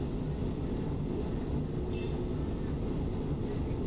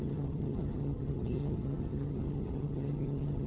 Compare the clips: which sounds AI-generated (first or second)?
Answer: second